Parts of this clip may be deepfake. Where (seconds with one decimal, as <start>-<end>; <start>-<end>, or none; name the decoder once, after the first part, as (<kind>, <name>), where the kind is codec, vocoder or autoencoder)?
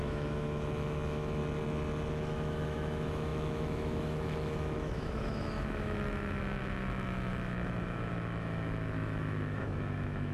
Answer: 0.0-1.4 (autoencoder, DAC-VAE); 2.1-10.3